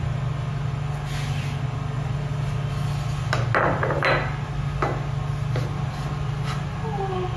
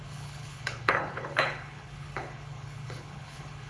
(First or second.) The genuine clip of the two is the first